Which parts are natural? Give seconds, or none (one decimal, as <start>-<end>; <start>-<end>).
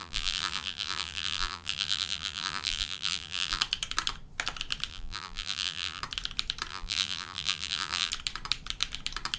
3.6-4.9; 6.0-6.7; 8.1-9.4